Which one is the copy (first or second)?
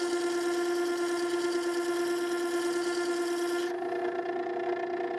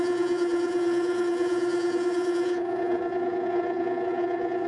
second